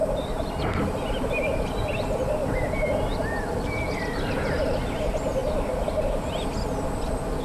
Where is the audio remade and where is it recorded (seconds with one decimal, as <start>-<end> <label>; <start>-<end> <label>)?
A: 0.0-2.4 recorded; 2.4-4.2 remade; 4.2-7.4 recorded